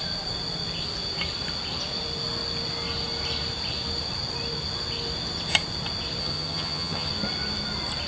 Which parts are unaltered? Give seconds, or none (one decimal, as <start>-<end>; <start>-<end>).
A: 0.0-6.2; 7.1-8.1